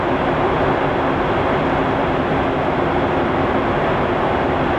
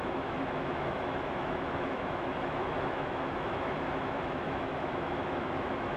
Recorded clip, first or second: first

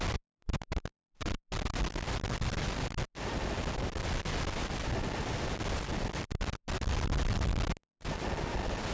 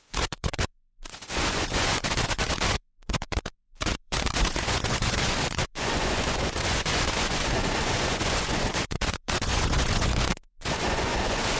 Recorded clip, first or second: first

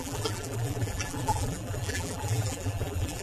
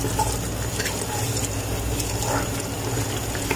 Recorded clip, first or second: second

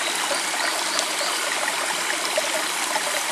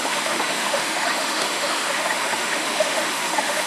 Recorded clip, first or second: first